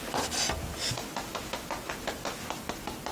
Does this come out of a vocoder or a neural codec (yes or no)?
no